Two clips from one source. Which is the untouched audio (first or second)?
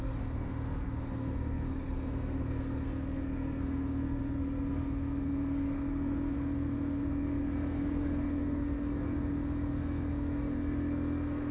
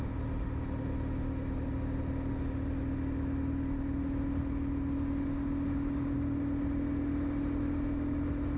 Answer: second